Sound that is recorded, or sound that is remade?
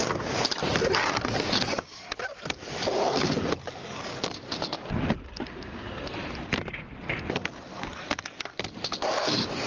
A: recorded